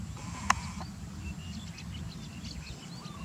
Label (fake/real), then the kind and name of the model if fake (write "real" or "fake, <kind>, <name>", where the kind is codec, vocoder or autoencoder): real